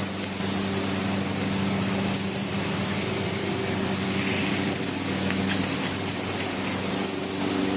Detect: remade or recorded remade